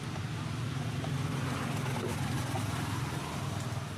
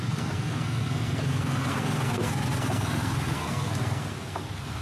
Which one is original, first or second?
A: first